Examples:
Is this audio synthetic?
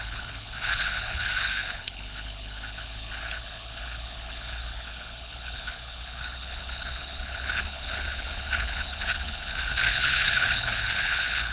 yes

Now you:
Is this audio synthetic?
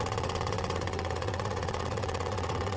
yes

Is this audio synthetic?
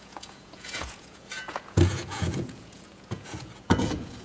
yes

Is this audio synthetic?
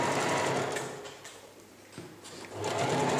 no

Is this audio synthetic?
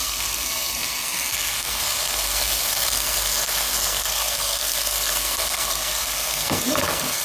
yes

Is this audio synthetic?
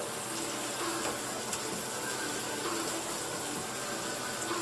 no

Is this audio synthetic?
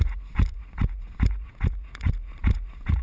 yes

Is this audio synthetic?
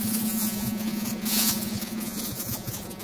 yes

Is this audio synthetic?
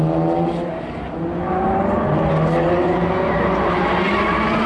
no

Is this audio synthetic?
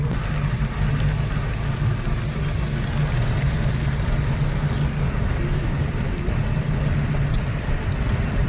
no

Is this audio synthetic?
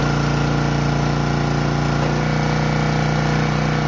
no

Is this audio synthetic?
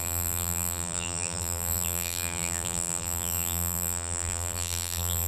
yes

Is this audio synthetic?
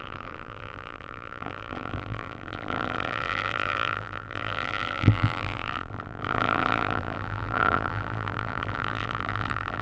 yes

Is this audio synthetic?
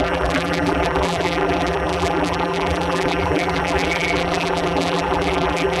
yes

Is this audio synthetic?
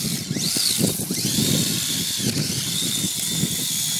no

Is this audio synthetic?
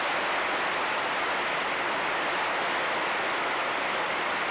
no